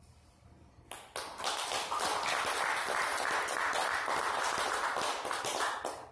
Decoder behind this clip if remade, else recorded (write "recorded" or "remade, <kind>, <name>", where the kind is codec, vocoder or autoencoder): recorded